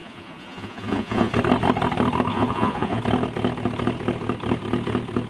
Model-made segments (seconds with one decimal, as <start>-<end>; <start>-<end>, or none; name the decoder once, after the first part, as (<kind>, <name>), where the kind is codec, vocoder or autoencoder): 0.0-1.3 (vocoder, Vocos); 2.3-3.0